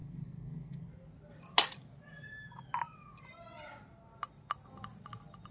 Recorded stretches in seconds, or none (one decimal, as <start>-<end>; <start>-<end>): 0.9-5.5